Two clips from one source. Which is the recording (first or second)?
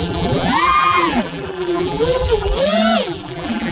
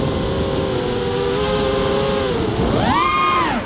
second